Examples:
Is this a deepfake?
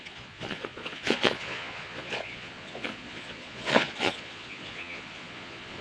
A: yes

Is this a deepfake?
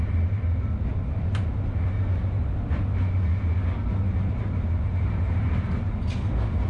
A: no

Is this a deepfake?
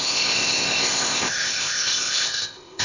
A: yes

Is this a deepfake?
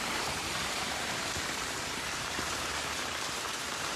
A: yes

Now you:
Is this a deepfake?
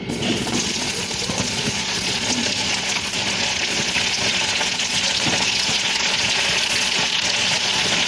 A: yes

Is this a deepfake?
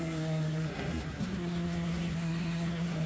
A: yes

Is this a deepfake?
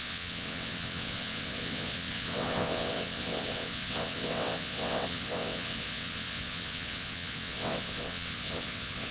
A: yes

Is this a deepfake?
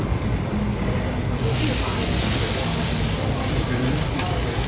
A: no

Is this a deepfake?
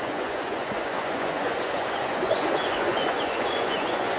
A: yes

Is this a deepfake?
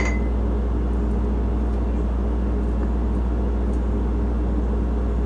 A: no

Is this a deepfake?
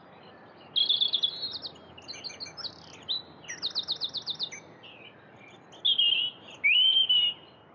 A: no